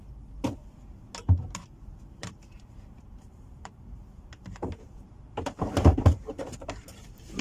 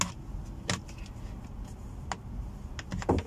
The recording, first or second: second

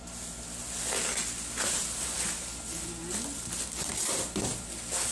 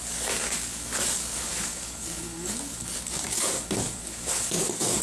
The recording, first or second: first